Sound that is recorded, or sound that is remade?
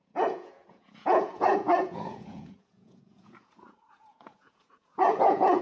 remade